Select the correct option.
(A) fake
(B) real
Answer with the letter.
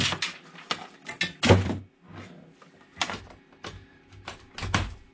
B